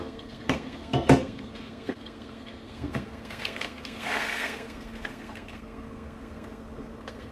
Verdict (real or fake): fake